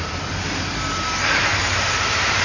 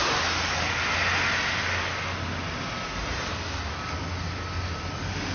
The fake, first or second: first